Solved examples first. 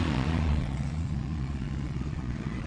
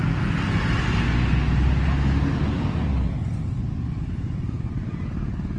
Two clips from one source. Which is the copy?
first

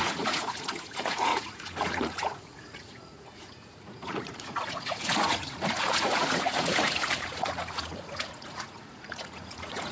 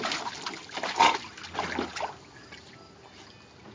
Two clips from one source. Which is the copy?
first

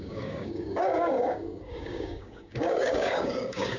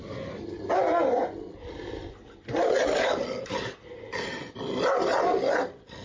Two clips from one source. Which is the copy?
first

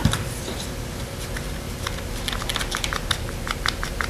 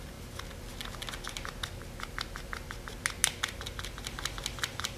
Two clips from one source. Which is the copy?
first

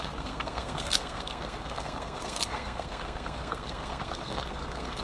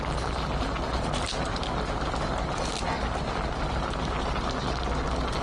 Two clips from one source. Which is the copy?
first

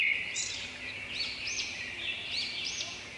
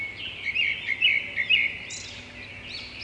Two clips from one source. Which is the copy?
first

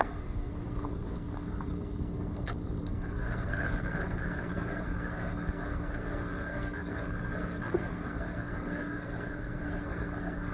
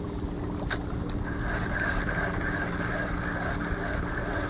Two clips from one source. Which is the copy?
first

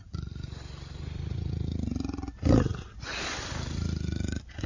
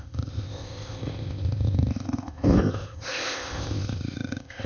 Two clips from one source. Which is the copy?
second